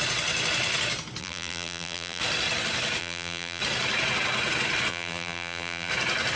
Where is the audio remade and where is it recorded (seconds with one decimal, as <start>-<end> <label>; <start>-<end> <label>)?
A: 0.0-1.2 recorded; 1.2-2.2 remade; 2.2-3.0 recorded; 3.0-3.6 remade; 3.6-4.9 recorded; 4.9-5.9 remade; 5.9-6.4 recorded